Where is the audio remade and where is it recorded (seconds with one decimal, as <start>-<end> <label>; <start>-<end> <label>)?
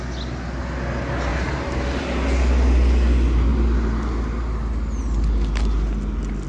0.0-6.5 recorded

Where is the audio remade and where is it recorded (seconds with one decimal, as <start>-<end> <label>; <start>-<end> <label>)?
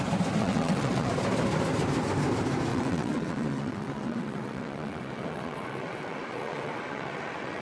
0.0-0.4 recorded; 0.4-1.1 remade; 1.1-2.7 recorded; 2.7-7.6 remade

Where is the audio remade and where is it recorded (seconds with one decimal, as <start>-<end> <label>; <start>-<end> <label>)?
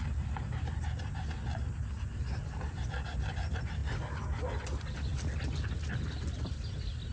0.0-7.1 recorded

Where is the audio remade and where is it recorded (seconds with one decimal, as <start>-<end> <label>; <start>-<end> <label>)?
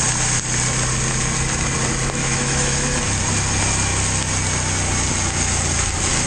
0.0-2.2 recorded; 2.2-2.8 remade; 2.8-6.3 recorded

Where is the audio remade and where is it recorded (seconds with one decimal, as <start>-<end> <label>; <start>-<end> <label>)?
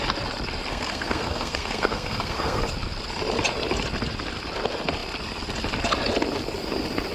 0.0-0.7 recorded; 0.7-2.6 remade; 2.6-7.1 recorded